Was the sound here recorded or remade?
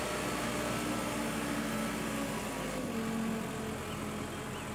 recorded